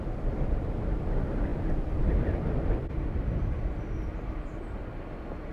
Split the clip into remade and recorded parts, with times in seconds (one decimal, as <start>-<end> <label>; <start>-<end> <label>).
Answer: 0.0-5.5 recorded